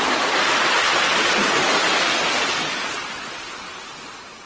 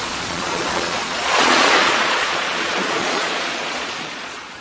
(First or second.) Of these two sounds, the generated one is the second